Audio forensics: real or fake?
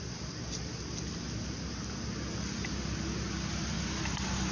real